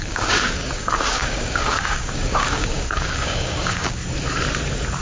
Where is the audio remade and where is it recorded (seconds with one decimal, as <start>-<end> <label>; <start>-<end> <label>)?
0.0-4.0 remade; 4.0-5.0 recorded